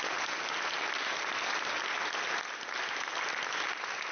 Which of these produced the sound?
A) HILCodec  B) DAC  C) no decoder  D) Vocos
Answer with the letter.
C